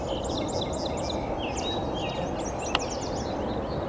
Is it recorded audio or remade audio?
recorded